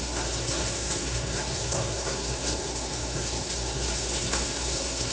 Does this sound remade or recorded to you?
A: remade